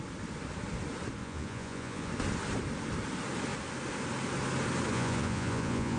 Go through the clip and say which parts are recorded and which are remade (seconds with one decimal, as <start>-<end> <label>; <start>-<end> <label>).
0.0-1.2 recorded; 1.2-2.1 remade; 2.1-4.9 recorded; 4.9-6.0 remade